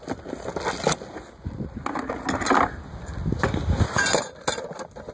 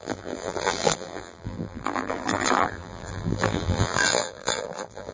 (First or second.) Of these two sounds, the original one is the first